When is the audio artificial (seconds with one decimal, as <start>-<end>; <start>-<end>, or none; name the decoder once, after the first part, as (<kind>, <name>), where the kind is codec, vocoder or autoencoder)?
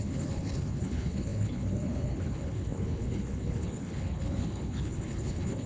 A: 0.0-5.7 (codec, HILCodec)